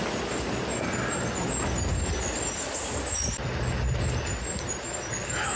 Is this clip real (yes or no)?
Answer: yes